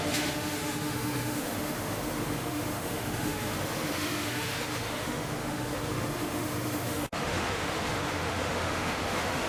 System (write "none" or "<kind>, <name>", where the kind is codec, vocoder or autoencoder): autoencoder, DAC-VAE